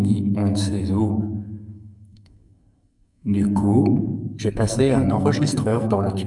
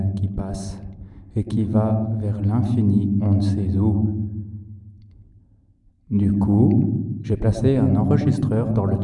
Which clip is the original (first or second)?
second